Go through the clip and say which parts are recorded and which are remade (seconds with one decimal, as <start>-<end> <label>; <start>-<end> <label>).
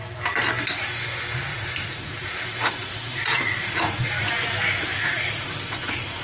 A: 0.0-1.5 recorded; 1.5-4.3 remade; 4.3-4.9 recorded; 4.9-6.2 remade